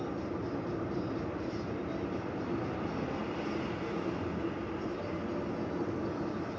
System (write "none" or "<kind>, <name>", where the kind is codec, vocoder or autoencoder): none